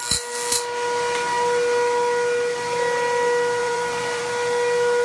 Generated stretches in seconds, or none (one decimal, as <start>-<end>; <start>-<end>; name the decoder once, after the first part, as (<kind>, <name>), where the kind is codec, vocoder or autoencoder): 3.6-4.2 (vocoder, BigVGAN v2)

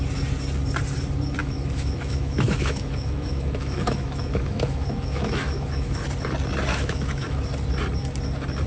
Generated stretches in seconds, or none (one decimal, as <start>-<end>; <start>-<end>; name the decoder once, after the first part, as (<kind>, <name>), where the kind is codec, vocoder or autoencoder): 1.4-6.0 (autoencoder, DAC-VAE); 6.7-7.4

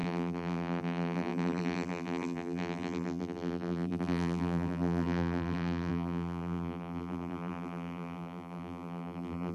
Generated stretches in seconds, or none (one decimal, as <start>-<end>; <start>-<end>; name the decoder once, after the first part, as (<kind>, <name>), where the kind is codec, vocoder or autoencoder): 0.0-9.5 (vocoder, BigVGAN v2)

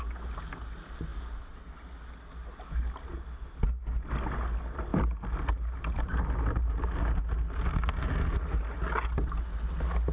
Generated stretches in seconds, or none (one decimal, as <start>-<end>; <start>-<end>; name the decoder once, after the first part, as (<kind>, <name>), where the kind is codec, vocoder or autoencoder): none